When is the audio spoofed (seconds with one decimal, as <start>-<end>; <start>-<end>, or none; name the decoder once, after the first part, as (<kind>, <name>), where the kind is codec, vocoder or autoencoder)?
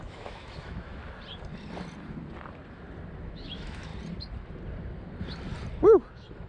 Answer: 0.0-1.0 (autoencoder, DAC-VAE); 3.2-3.9; 6.1-6.5